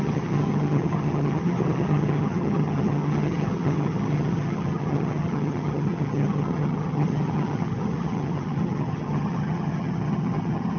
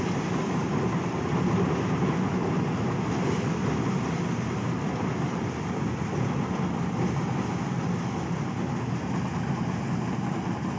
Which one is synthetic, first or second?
first